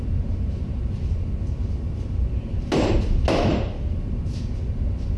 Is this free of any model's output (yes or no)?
yes